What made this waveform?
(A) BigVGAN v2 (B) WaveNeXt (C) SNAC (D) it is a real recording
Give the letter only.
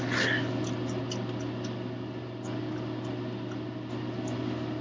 D